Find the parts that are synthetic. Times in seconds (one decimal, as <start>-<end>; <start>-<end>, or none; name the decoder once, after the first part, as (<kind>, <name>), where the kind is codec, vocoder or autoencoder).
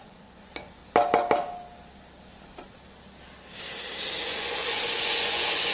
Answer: 0.0-0.8 (vocoder, Vocos); 4.2-5.7